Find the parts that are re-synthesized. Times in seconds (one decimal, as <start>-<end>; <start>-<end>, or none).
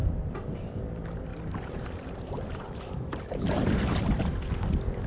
0.0-0.8; 1.3-4.4